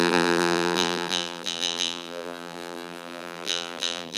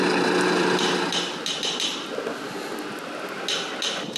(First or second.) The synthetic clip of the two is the first